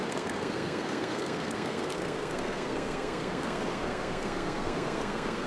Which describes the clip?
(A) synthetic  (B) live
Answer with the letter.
A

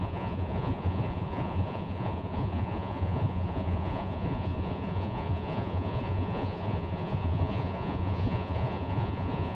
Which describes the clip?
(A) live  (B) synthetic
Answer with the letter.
B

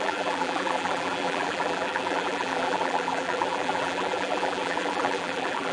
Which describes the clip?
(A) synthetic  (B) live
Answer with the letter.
A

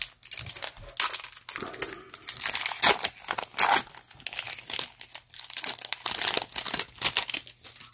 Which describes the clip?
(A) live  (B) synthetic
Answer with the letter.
A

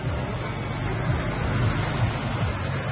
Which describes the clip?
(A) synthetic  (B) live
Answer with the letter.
B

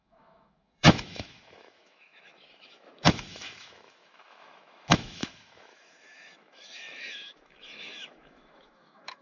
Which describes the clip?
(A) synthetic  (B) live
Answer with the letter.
A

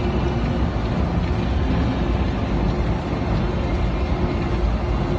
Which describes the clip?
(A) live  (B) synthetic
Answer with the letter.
A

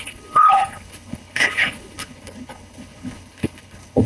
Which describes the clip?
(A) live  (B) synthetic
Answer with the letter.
B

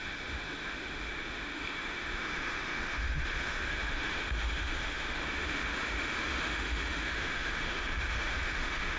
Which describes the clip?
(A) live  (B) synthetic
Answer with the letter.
B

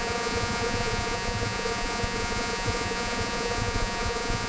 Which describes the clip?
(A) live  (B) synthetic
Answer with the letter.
B